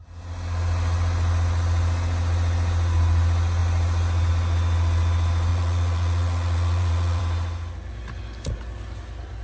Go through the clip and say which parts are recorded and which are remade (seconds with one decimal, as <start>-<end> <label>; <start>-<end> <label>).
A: 0.0-5.5 recorded; 5.5-7.2 remade; 7.2-9.4 recorded